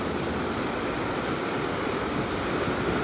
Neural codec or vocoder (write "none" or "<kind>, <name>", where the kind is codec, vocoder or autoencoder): none